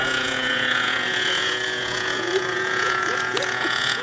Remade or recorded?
remade